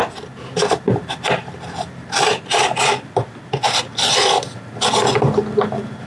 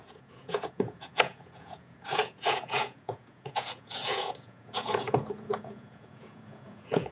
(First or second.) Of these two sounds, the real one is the first